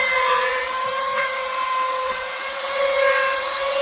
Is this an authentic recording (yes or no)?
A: no